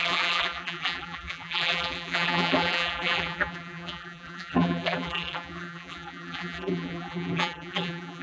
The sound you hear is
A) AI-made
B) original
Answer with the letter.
A